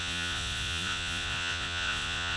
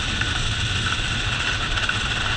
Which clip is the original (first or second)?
second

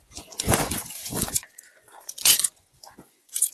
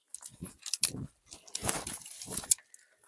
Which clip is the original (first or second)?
second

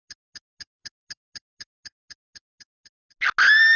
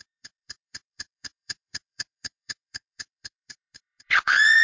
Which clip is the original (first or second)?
first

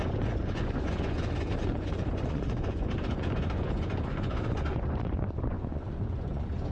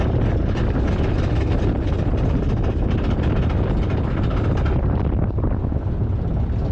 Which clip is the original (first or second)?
second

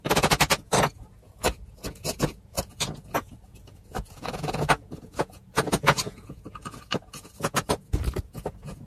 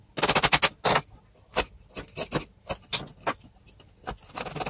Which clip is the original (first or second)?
second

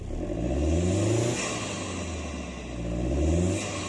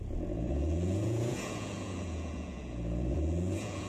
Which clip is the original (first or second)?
first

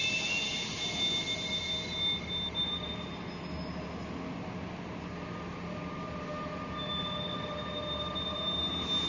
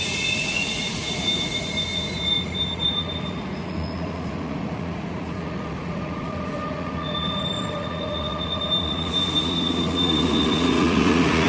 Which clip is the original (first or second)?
first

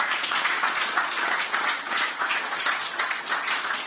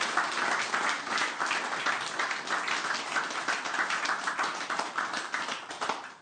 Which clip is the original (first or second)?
second